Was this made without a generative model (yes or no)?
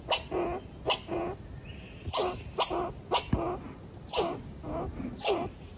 yes